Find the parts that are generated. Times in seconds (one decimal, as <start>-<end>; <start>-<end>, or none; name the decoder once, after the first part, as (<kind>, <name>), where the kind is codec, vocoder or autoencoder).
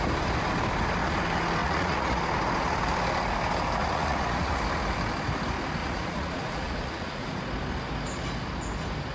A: 1.6-2.2 (vocoder, Vocos); 3.8-4.6; 5.8-7.4